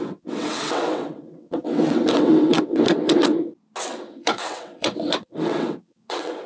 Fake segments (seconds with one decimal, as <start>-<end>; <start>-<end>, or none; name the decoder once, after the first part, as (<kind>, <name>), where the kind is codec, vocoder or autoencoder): 0.0-3.3 (vocoder, WaveNeXt); 4.0-6.5